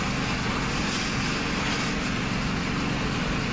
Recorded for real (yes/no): yes